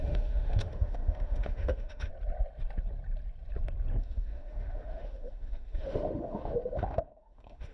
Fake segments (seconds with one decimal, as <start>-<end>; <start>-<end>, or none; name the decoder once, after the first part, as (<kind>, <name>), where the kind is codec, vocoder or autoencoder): 0.0-2.1 (autoencoder, DAC-VAE); 4.0-7.7